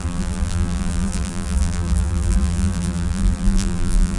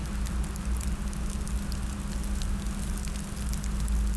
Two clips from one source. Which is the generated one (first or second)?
first